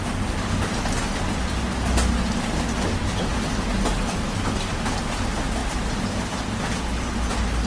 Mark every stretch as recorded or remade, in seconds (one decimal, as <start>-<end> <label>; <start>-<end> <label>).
0.0-7.7 recorded